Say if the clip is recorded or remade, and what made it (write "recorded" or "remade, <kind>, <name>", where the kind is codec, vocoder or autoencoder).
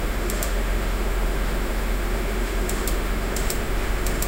remade, autoencoder, DAC-VAE